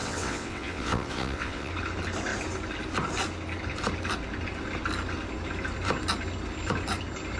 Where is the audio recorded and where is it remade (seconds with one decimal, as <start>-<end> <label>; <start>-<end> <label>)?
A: 0.0-1.7 remade; 1.7-7.4 recorded